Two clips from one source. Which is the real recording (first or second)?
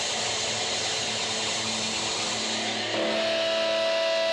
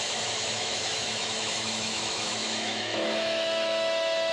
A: first